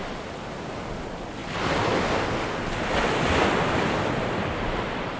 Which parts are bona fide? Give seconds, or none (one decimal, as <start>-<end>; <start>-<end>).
0.0-5.2